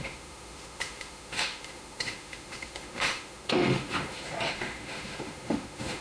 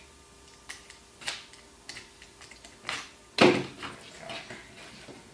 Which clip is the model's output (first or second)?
first